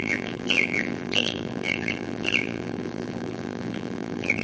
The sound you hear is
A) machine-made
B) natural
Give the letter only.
A